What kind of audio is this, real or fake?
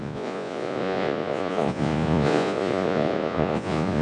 fake